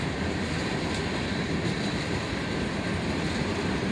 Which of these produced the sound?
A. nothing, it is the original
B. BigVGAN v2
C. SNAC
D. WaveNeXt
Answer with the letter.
B